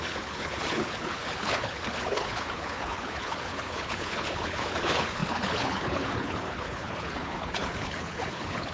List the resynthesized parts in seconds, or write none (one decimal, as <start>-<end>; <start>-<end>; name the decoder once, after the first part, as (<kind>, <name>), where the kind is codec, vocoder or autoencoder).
0.0-8.7 (codec, HILCodec)